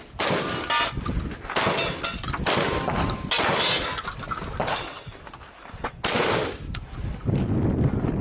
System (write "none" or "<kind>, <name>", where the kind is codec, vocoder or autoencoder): none